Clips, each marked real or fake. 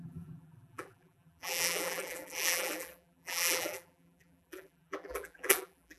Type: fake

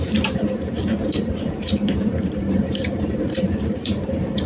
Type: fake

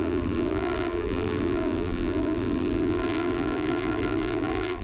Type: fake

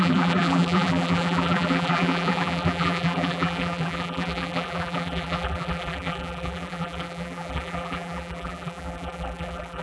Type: fake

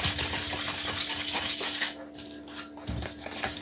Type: real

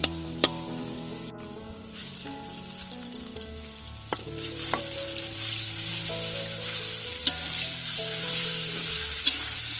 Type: fake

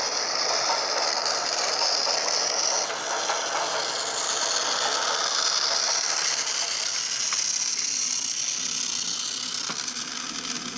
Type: real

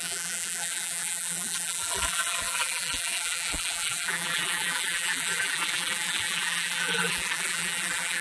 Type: fake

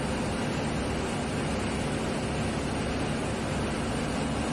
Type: real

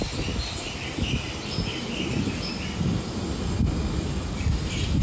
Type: real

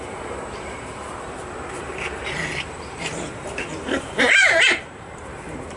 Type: fake